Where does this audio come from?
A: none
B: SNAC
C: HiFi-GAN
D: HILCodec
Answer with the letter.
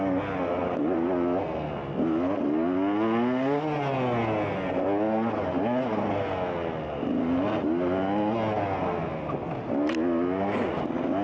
A